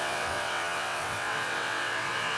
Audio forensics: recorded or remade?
remade